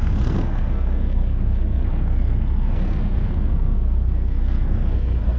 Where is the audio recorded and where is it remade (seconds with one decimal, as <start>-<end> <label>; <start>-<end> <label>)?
0.0-5.4 remade